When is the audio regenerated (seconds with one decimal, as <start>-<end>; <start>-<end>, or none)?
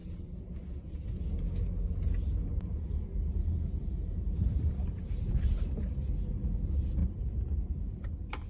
0.0-0.9; 2.5-5.4; 7.0-8.1